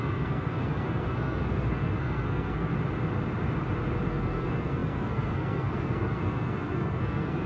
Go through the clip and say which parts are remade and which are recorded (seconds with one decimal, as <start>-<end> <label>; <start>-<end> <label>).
0.0-2.7 remade; 2.7-4.1 recorded; 4.1-7.5 remade